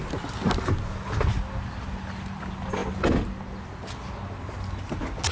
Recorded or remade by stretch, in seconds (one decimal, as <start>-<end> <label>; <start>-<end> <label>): 0.0-5.3 recorded

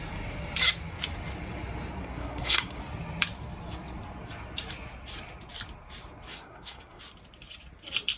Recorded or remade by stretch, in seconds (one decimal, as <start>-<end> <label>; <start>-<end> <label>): 0.0-2.0 recorded; 2.0-2.8 remade; 2.8-6.3 recorded; 6.3-7.0 remade; 7.0-8.2 recorded